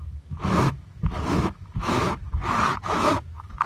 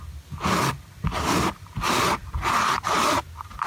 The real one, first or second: second